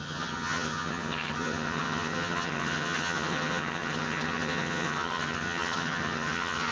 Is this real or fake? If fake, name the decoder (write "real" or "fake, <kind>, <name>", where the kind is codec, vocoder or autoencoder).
fake, vocoder, HiFi-GAN